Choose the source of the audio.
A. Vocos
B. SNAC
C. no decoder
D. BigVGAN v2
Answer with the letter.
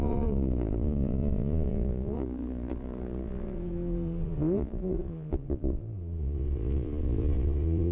A